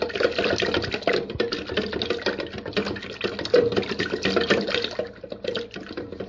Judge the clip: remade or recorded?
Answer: recorded